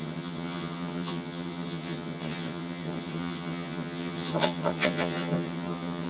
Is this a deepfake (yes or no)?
yes